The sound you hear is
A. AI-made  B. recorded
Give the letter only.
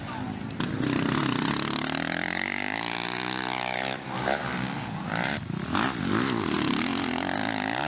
B